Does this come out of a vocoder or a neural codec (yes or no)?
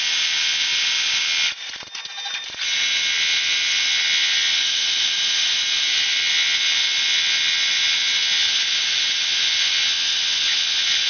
no